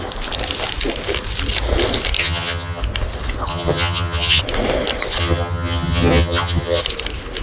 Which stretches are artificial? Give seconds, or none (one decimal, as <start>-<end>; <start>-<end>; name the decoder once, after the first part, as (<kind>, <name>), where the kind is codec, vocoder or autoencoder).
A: 2.2-2.8 (vocoder, HiFi-GAN); 3.5-4.4; 5.2-6.8